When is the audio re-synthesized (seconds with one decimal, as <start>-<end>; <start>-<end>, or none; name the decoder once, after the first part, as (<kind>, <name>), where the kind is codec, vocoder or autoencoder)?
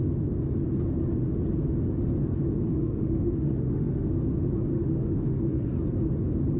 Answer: 2.6-4.1 (autoencoder, DAC-VAE); 4.7-5.7